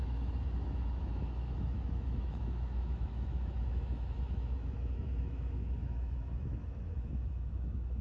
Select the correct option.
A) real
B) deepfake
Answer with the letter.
B